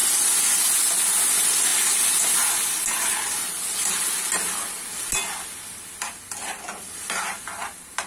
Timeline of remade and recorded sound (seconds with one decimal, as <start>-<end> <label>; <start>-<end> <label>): 0.0-8.1 recorded